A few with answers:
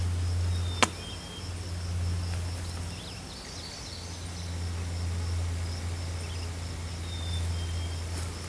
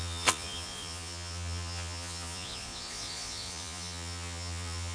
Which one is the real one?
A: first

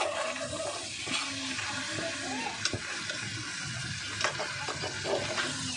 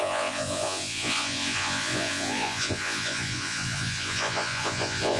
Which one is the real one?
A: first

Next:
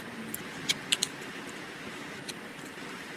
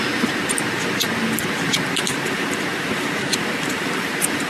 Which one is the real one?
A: second